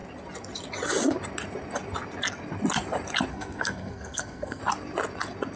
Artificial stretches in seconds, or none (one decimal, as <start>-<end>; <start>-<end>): 3.3-4.6